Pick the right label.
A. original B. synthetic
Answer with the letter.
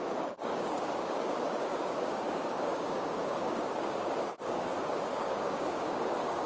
B